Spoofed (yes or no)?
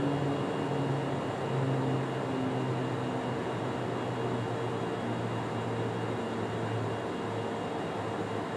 no